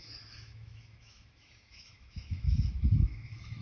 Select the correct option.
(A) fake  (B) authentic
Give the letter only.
A